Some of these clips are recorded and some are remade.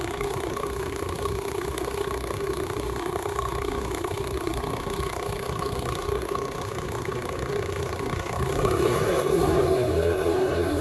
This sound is remade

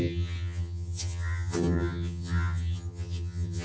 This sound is remade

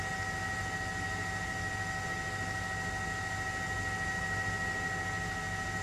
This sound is recorded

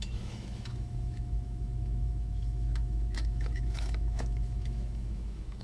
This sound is remade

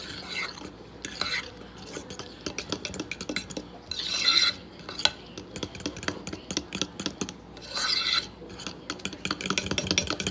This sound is recorded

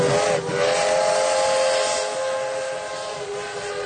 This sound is recorded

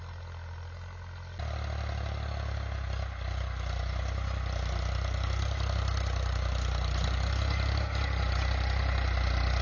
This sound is recorded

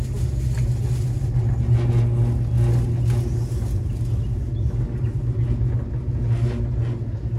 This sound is recorded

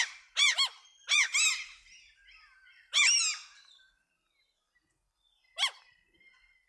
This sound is recorded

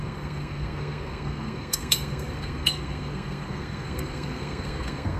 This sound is remade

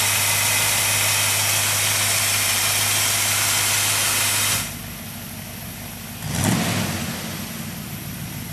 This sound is recorded